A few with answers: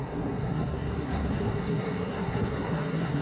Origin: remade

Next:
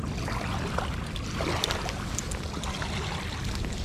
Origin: recorded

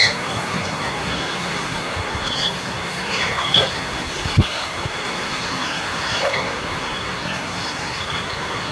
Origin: remade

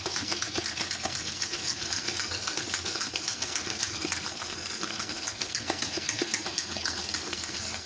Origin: remade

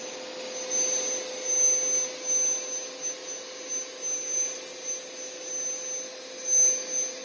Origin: recorded